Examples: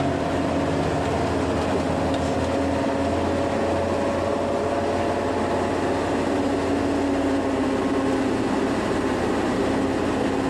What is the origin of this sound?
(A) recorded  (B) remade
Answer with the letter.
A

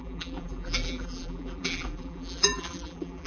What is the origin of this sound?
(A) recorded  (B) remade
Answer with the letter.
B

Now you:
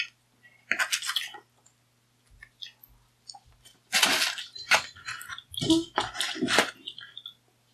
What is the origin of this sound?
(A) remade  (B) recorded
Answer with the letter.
B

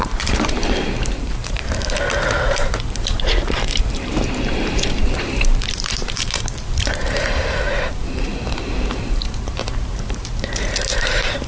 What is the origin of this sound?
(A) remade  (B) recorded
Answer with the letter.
A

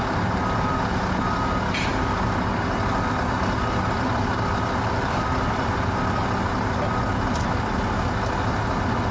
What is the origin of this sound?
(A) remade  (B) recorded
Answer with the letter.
B